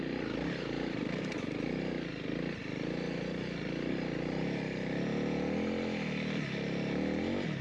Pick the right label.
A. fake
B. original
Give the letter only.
B